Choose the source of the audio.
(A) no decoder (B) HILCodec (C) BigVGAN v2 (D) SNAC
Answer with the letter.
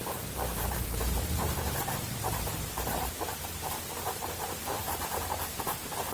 C